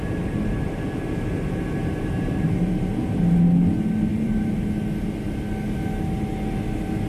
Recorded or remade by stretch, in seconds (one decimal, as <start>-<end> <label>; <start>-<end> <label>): 0.0-1.8 recorded; 1.8-3.1 remade; 3.1-4.1 recorded; 4.1-4.6 remade; 4.6-7.1 recorded